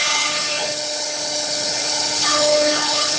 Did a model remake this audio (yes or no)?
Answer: yes